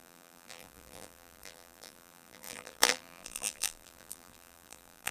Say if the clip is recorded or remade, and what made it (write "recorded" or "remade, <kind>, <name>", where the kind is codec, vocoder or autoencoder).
remade, vocoder, BigVGAN v2